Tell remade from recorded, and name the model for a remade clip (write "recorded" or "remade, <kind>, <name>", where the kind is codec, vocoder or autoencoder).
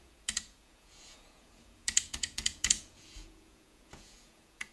remade, vocoder, Vocos